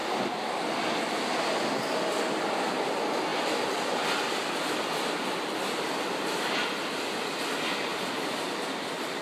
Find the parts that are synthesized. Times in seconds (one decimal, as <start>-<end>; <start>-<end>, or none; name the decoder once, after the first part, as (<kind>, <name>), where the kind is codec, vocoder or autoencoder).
none